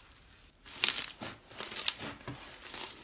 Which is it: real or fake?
real